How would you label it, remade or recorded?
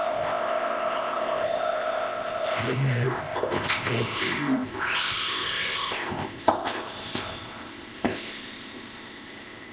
remade